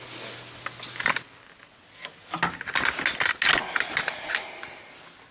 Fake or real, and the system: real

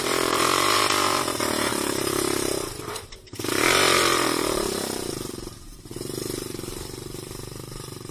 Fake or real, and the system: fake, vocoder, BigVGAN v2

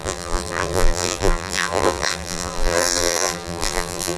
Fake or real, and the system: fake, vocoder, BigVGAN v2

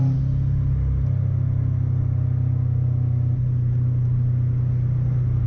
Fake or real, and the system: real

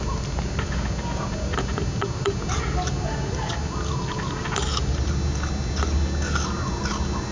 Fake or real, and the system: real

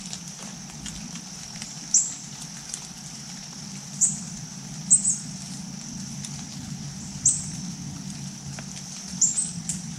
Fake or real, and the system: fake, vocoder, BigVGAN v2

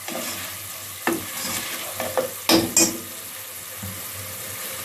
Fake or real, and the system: real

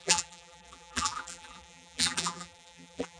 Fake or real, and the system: fake, vocoder, BigVGAN v2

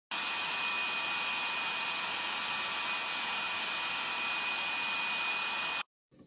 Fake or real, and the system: real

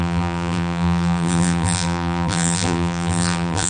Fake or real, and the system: fake, vocoder, BigVGAN v2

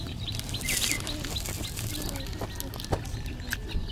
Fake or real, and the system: real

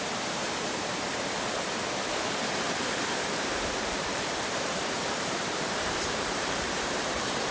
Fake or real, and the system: fake, vocoder, BigVGAN v2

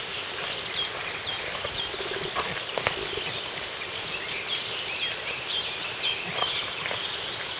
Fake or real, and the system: fake, vocoder, BigVGAN v2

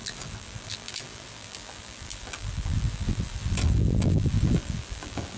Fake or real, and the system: fake, vocoder, BigVGAN v2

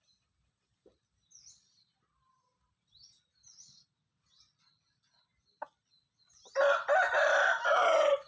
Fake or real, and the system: real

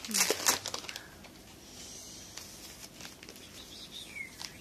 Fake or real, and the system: real